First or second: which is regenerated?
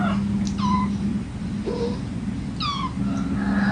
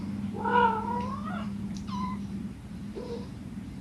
second